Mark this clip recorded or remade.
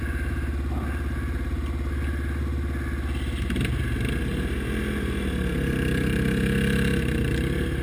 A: recorded